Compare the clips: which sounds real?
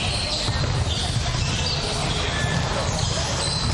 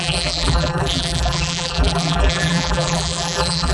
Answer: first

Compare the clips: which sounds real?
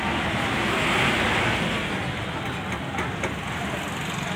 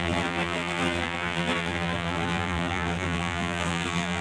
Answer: first